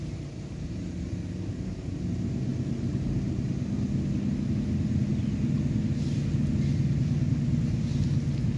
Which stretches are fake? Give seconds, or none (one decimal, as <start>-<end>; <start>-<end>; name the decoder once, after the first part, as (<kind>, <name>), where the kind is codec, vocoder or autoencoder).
none